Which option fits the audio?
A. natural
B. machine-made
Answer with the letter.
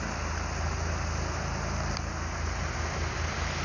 A